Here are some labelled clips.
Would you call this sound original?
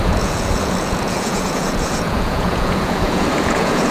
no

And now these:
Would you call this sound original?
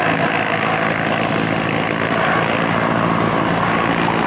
yes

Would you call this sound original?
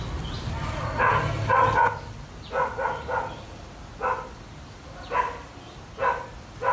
yes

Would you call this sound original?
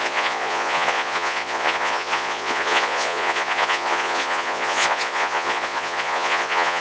no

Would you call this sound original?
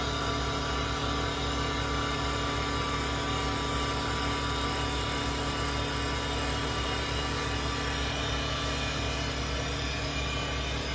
yes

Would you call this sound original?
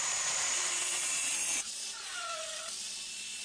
no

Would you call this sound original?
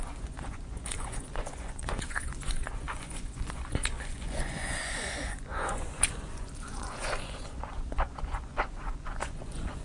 no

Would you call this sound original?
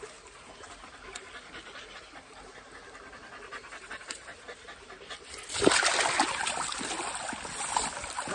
yes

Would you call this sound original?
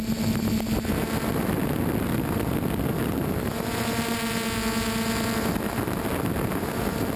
yes